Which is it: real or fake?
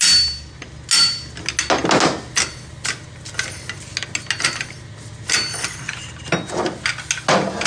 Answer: real